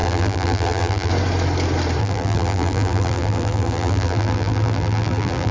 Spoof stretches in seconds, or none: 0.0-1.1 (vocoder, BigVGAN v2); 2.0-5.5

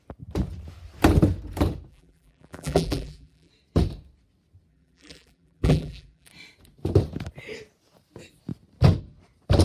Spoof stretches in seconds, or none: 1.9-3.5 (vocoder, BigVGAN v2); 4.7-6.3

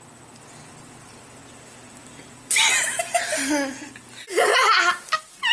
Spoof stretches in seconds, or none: none

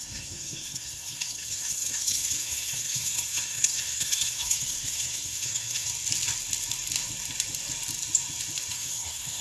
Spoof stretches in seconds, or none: 0.0-5.9 (codec, SNAC); 8.7-9.4

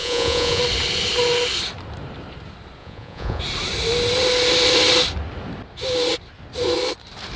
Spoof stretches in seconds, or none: 0.0-0.6 (vocoder, Vocos); 2.8-3.4